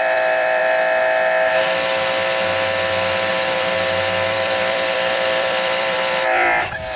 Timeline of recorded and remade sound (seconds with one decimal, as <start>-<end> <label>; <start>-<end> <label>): 0.0-0.6 remade; 0.6-3.3 recorded; 3.3-7.0 remade

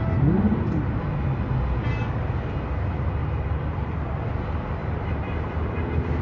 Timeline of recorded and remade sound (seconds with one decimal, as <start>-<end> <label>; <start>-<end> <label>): 0.0-3.2 recorded; 3.2-4.0 remade; 4.0-4.8 recorded; 4.8-5.8 remade; 5.8-6.2 recorded

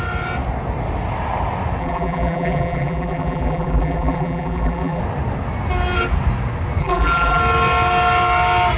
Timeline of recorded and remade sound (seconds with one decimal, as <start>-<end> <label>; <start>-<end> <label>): 0.0-1.8 recorded; 1.8-5.0 remade; 5.0-6.8 recorded; 6.8-7.4 remade; 7.4-8.8 recorded

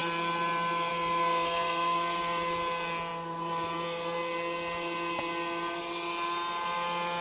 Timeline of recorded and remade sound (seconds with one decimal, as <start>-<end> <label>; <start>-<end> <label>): 0.0-7.2 recorded

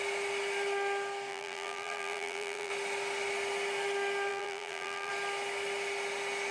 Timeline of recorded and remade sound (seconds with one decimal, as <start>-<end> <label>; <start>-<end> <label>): 0.0-1.3 recorded; 1.3-2.7 remade; 2.7-4.3 recorded; 4.3-5.1 remade; 5.1-6.5 recorded

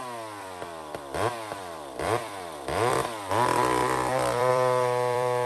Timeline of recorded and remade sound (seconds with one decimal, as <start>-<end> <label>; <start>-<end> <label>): 0.0-5.5 remade

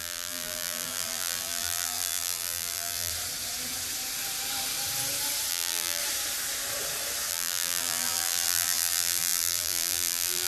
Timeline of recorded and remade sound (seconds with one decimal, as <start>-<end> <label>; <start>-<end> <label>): 0.0-3.1 remade; 3.1-5.5 recorded; 5.5-6.0 remade; 6.0-7.3 recorded; 7.3-10.5 remade

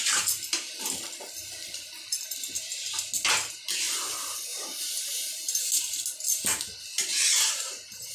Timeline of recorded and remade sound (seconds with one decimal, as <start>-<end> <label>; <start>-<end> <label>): 0.0-4.5 recorded; 4.5-6.0 remade; 6.0-8.1 recorded